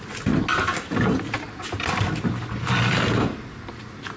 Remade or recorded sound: recorded